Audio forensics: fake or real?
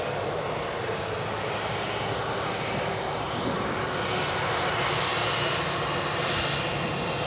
real